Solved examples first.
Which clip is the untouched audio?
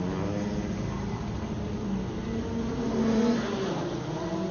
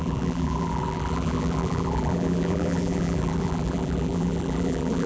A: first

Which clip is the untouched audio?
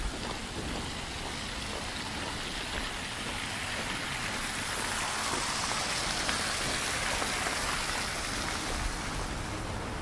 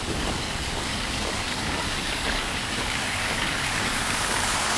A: first